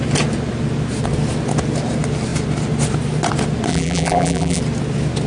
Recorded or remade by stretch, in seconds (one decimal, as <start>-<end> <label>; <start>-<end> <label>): 0.0-3.7 recorded; 3.7-4.6 remade; 4.6-5.3 recorded